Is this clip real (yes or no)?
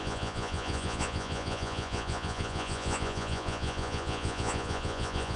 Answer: no